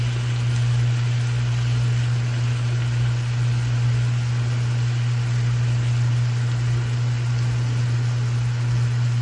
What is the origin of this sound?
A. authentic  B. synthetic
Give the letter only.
A